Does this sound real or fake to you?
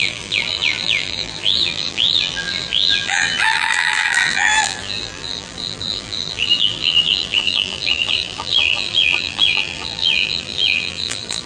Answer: fake